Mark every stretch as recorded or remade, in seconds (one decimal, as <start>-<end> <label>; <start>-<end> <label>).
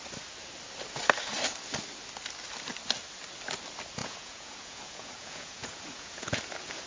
0.0-4.0 recorded; 4.0-6.4 remade; 6.4-6.9 recorded